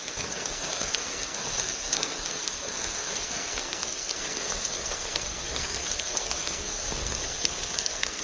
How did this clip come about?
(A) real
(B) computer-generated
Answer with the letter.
B